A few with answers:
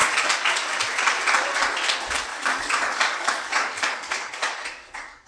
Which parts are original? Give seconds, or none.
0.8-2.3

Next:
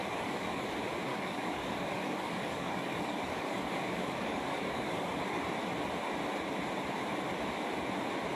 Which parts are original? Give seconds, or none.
0.7-1.1; 5.4-8.4

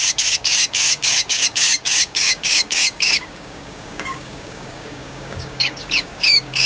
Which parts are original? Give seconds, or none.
none

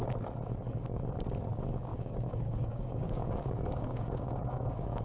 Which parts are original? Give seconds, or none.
0.0-1.9

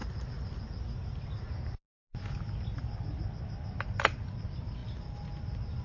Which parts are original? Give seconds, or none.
0.0-5.8

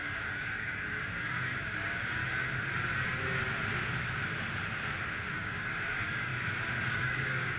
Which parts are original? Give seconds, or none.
2.2-5.3; 6.3-6.9